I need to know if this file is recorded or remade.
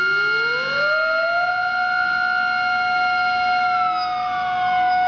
recorded